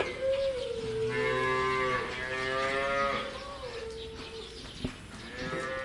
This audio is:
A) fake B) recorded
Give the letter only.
B